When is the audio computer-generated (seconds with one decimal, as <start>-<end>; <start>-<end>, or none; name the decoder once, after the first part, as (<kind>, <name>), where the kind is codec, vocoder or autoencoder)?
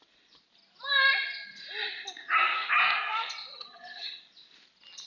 3.5-4.2 (vocoder, HiFi-GAN)